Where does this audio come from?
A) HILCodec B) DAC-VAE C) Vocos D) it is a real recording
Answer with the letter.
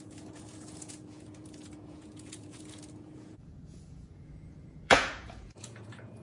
C